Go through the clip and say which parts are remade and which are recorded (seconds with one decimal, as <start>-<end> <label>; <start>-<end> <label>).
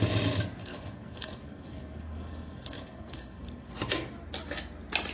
0.0-0.6 recorded; 0.6-3.7 remade; 3.7-5.1 recorded